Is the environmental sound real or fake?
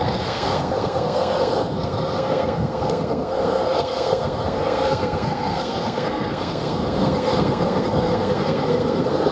fake